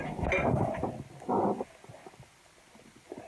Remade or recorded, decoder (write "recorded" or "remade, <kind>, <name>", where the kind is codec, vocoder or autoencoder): recorded